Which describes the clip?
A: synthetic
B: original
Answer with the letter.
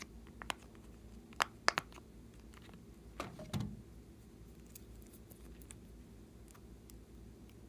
B